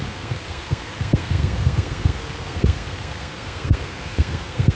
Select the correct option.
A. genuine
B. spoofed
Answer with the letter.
B